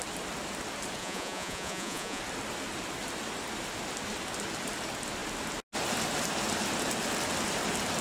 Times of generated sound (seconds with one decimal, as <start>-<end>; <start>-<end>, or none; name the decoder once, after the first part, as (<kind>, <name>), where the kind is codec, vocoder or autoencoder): 1.0-2.2 (vocoder, Vocos)

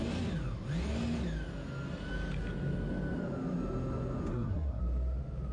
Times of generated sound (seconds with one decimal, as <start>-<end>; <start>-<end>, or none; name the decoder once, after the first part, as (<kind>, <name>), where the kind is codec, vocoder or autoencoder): 4.3-4.8 (codec, SNAC)